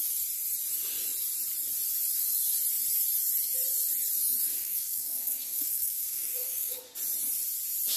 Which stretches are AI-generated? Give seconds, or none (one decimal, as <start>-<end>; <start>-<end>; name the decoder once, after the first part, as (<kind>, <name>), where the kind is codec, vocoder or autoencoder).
4.6-6.8 (codec, SNAC)